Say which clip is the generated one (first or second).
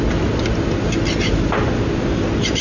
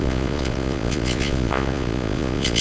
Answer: second